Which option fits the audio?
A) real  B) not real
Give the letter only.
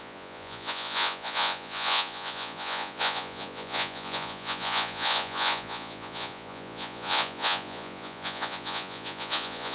B